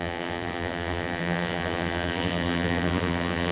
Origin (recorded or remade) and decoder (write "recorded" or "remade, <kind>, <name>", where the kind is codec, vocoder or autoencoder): remade, vocoder, BigVGAN v2